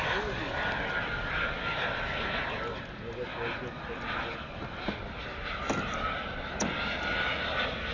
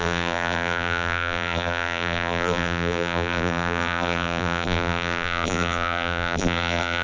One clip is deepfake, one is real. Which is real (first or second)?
first